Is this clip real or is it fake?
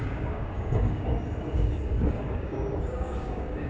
fake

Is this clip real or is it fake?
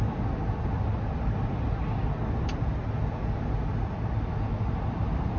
real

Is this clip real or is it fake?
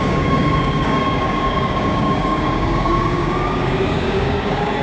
fake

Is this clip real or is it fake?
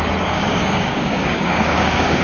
fake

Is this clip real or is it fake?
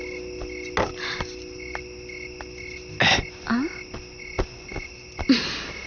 real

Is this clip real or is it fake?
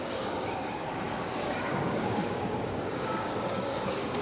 fake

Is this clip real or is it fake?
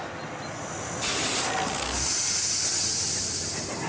real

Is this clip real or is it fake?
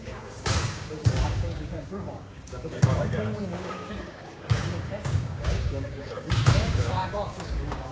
fake